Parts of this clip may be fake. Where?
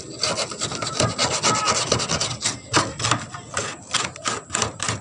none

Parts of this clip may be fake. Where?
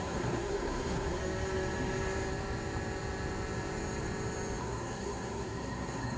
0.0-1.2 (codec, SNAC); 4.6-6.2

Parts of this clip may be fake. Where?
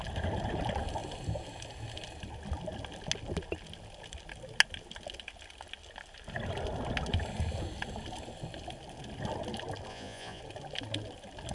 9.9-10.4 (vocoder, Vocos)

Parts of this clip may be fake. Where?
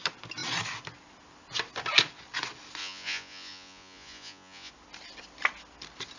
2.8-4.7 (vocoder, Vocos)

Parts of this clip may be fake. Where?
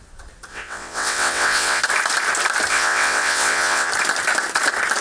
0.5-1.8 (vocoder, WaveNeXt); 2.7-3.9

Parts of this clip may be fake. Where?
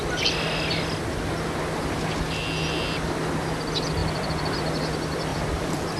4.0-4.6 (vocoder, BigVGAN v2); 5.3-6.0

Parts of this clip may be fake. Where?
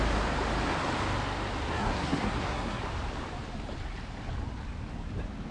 1.7-2.8 (codec, SNAC)